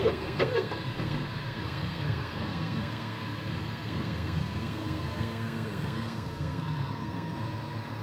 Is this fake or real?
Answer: fake